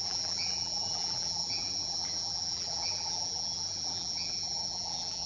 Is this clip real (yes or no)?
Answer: no